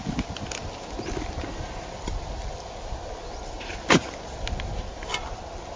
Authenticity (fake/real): real